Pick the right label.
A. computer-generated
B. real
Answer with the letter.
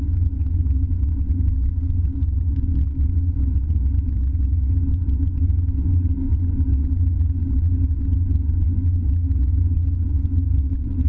B